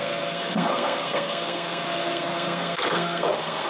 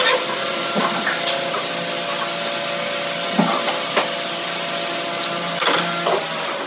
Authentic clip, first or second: second